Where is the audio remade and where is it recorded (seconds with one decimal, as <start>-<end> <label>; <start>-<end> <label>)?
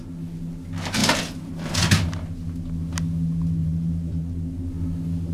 0.0-1.0 recorded; 1.0-1.7 remade; 1.7-3.6 recorded; 3.6-4.2 remade; 4.2-5.3 recorded